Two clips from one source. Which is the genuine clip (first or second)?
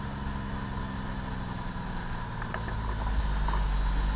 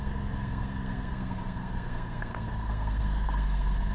first